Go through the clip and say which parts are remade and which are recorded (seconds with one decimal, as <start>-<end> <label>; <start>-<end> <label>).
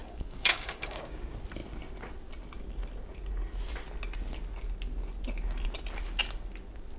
0.0-1.2 remade; 1.2-7.0 recorded